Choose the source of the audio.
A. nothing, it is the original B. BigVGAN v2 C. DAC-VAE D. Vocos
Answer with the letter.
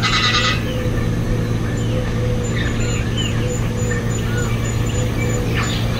A